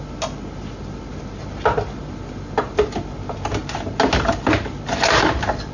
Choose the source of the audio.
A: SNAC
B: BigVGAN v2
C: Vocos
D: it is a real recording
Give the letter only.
D